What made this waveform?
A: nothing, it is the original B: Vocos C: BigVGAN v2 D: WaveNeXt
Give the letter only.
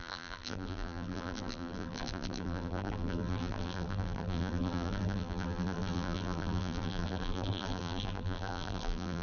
C